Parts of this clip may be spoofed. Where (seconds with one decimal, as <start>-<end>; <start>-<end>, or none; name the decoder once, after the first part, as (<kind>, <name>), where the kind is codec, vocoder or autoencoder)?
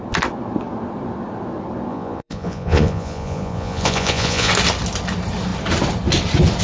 1.9-4.5 (vocoder, Vocos)